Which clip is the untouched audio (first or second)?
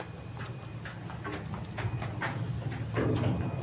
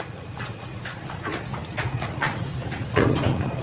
first